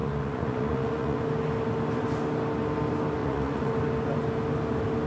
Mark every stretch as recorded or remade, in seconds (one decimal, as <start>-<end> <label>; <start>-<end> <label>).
0.0-1.2 remade; 1.2-3.2 recorded; 3.2-3.7 remade; 3.7-5.1 recorded